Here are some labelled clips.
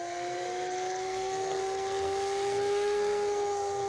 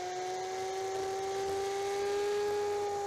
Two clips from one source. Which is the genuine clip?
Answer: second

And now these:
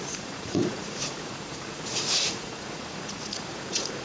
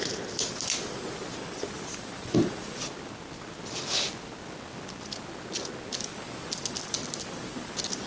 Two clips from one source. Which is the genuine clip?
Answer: second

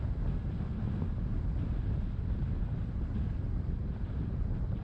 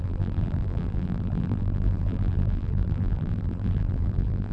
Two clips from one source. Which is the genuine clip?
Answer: first